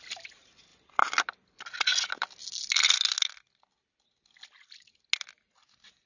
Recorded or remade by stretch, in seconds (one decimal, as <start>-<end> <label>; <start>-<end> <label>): 0.0-6.1 recorded